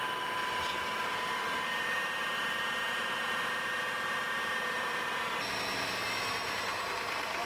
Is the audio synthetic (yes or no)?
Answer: yes